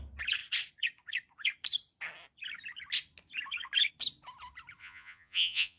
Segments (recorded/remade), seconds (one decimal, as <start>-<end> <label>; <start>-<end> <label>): 0.0-4.8 recorded; 4.8-5.8 remade